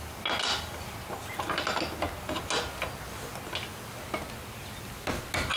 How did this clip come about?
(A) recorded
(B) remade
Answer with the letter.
A